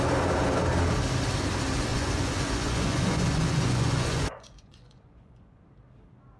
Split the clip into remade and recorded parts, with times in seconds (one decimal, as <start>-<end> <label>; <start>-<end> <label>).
0.0-1.9 recorded; 1.9-5.6 remade; 5.6-6.4 recorded